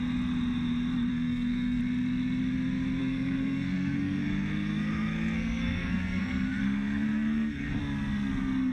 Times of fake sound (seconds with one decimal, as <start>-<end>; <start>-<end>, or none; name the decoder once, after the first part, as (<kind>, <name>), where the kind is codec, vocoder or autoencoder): 1.1-1.8 (codec, SNAC); 3.0-7.8